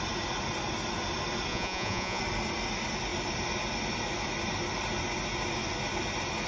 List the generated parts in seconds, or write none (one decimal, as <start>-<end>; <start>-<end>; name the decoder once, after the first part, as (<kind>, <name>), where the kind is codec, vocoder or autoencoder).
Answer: 1.5-2.2 (vocoder, Vocos)